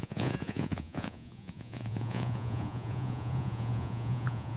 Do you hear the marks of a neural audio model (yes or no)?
yes